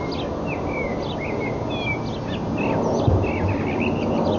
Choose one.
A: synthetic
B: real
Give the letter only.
B